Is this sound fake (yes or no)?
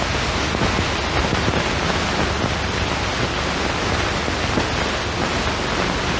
no